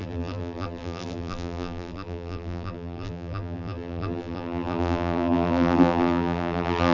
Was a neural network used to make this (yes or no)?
yes